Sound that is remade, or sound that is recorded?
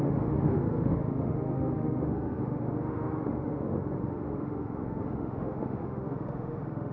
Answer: remade